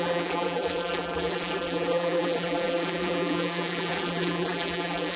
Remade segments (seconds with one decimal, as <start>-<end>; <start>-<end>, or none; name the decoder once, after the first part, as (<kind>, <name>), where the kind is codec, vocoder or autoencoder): 0.0-5.2 (vocoder, BigVGAN v2)